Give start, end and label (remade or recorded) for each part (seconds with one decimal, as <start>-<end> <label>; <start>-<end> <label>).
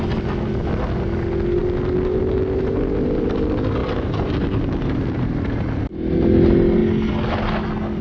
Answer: 0.0-3.8 recorded; 3.8-5.5 remade; 5.5-8.0 recorded